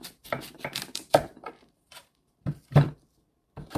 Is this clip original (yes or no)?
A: no